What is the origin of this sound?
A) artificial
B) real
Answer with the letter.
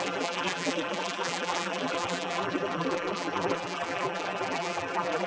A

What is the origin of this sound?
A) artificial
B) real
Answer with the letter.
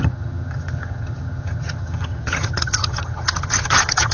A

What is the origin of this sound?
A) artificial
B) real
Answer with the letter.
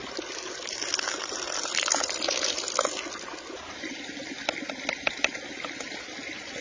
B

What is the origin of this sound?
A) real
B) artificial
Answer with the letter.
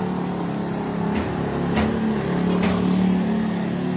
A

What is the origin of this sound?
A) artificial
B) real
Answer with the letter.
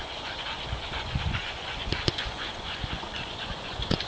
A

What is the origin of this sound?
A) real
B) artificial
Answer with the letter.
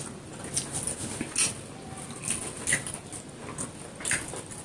A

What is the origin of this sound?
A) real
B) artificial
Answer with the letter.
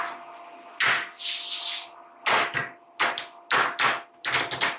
A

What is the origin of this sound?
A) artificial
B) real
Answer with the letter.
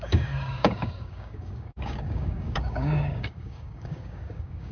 A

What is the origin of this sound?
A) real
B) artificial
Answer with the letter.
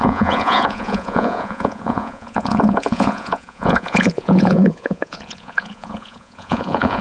B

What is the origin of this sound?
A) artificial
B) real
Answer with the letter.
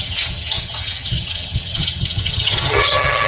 A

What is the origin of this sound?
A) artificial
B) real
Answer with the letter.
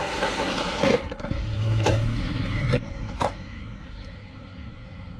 A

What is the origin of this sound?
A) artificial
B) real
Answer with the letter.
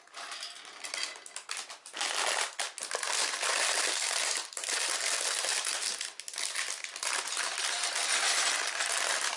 B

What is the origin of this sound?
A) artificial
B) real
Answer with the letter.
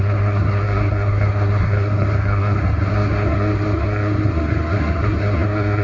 A